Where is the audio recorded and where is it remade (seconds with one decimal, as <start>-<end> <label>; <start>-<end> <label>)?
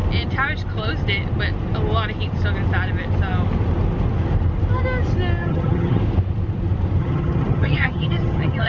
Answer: 0.0-5.4 recorded; 5.4-6.0 remade; 6.0-7.0 recorded; 7.0-8.7 remade